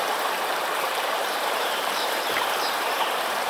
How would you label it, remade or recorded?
remade